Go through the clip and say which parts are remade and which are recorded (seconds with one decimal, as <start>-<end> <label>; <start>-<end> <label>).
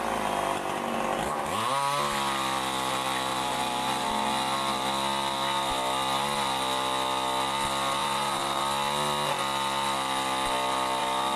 0.0-3.3 recorded; 3.3-4.2 remade; 4.2-8.0 recorded; 8.0-8.6 remade; 8.6-11.4 recorded